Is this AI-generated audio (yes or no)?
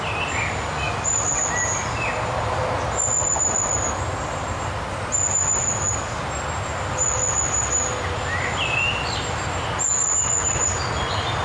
no